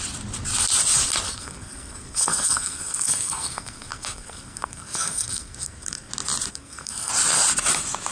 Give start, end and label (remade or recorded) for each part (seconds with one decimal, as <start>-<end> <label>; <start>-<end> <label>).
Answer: 0.0-1.3 recorded; 1.3-6.1 remade; 6.1-6.5 recorded; 6.5-7.1 remade; 7.1-8.1 recorded